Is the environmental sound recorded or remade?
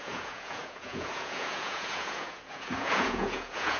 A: remade